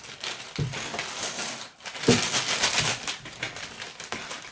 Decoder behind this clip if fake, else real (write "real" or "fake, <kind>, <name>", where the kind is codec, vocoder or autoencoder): real